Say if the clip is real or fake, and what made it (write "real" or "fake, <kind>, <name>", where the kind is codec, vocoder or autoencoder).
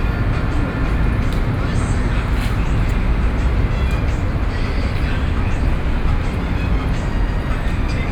real